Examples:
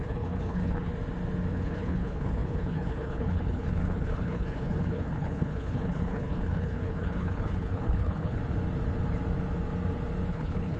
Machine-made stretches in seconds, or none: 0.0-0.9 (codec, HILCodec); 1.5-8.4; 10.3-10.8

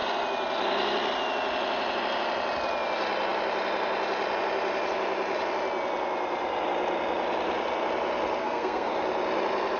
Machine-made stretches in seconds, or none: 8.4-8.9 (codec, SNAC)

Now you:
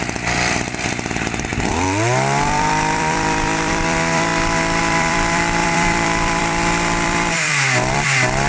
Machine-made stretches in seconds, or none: 0.0-4.3 (vocoder, BigVGAN v2); 4.8-8.5

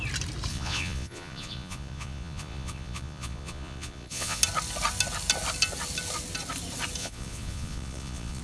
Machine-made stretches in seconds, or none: 0.5-4.4 (vocoder, Vocos); 7.0-8.4

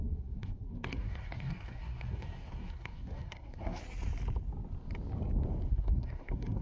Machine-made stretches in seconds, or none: 0.0-3.8 (codec, SNAC); 5.7-6.6